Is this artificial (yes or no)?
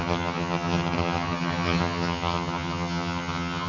yes